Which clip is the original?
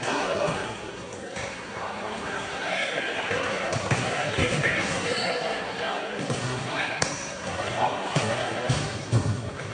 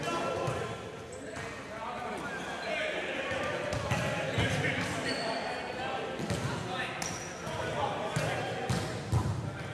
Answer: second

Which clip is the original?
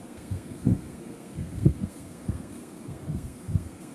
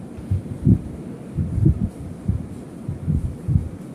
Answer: second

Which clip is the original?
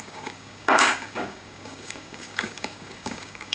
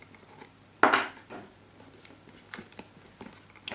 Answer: second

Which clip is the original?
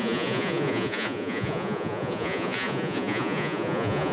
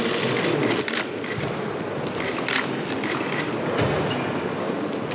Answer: second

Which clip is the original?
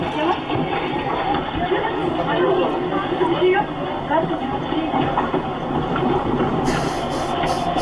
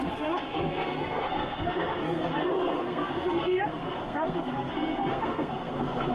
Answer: first